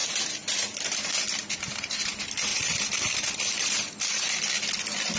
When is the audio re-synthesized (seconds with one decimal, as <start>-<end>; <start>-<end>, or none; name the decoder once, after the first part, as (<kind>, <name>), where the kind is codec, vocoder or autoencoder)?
2.5-3.7 (vocoder, BigVGAN v2)